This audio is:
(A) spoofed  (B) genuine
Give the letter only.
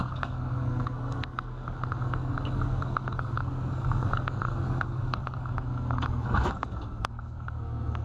A